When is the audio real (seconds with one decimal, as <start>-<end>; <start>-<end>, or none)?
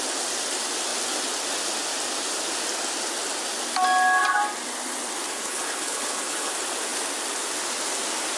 0.0-5.3; 6.5-8.4